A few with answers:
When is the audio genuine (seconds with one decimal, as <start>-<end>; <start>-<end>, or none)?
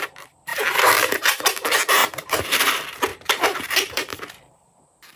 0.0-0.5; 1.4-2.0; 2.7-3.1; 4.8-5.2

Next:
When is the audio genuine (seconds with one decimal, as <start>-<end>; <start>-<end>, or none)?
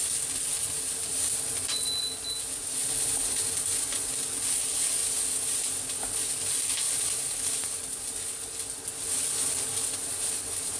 0.0-10.8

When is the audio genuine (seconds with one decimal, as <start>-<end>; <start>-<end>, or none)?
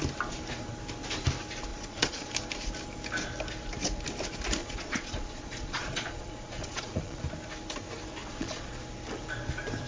0.0-1.7; 2.3-4.6; 7.2-8.2; 8.8-9.9